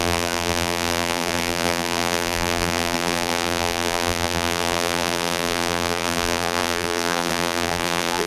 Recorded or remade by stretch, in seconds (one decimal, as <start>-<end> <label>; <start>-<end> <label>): 0.0-8.3 remade